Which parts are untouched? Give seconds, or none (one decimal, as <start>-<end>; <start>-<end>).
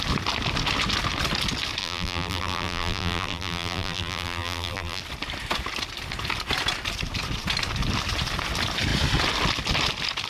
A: 0.0-1.8; 5.0-10.3